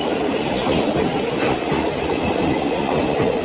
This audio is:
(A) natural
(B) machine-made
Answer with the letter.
B